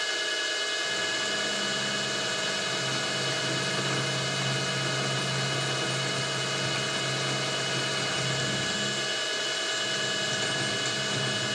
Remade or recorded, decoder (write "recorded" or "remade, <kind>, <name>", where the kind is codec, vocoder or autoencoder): recorded